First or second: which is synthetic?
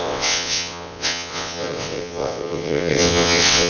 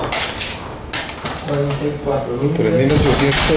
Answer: first